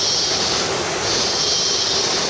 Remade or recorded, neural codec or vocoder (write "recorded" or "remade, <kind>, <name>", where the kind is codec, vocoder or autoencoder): recorded